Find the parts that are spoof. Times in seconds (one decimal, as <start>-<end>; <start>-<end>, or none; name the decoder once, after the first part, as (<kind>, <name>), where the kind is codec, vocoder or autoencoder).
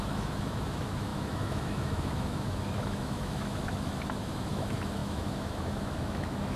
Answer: 0.0-6.6 (autoencoder, DAC-VAE)